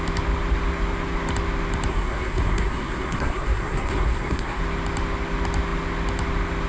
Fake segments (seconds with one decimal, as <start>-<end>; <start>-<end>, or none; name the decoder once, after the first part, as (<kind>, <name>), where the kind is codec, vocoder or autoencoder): 1.9-4.6 (codec, SNAC)